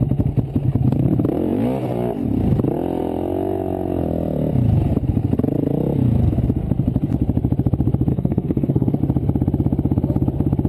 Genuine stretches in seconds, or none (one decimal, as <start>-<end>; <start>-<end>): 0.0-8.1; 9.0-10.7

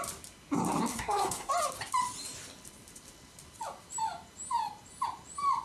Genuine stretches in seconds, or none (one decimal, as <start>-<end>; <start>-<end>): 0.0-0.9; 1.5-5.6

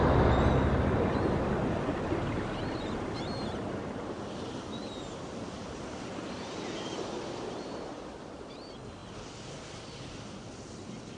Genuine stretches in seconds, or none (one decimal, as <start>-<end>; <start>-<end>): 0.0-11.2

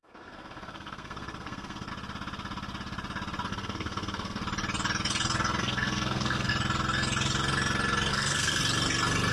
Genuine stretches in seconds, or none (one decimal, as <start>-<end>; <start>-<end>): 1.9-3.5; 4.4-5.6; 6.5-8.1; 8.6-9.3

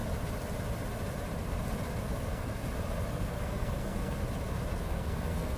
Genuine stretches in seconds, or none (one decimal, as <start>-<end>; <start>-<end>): 0.0-2.0; 2.6-3.1; 4.2-4.7

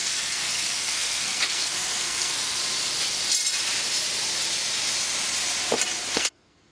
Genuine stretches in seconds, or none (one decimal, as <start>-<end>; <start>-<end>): 2.6-6.1

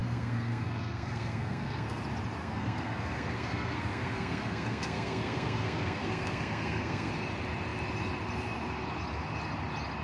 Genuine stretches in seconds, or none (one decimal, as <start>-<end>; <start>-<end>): 2.0-2.4; 7.1-10.0

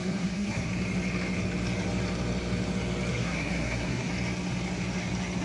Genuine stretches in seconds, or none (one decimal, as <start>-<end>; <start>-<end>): 0.7-3.1; 4.1-5.4